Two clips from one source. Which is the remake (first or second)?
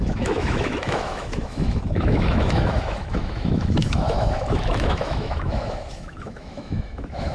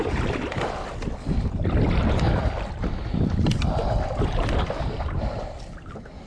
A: first